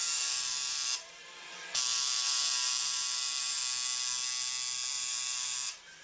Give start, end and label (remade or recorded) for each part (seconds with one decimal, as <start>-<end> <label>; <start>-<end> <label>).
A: 0.0-3.6 remade; 3.6-4.9 recorded; 4.9-6.0 remade